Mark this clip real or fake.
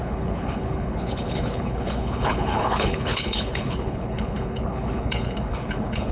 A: fake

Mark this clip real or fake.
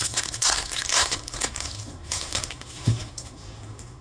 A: fake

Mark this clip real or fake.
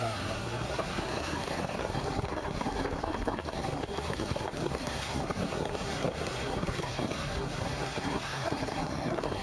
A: fake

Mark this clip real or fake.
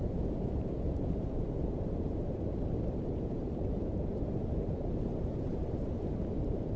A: fake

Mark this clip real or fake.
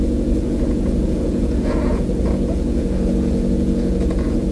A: fake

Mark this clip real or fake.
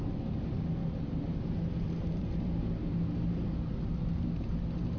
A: real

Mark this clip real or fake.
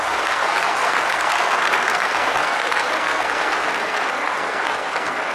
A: fake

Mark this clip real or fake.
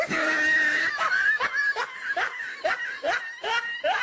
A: real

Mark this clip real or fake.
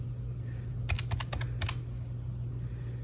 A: real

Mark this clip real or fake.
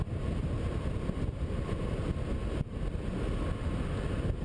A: real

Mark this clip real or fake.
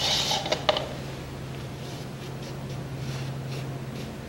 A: real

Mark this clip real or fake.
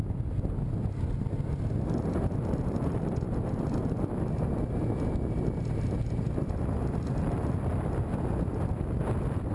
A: real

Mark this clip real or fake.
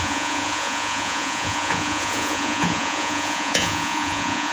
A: fake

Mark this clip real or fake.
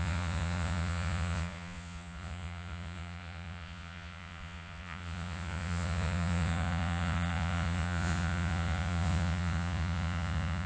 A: fake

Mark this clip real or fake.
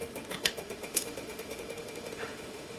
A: fake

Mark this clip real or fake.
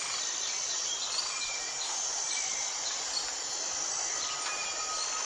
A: real